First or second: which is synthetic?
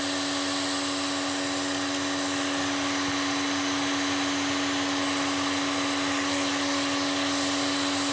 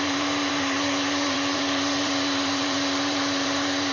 second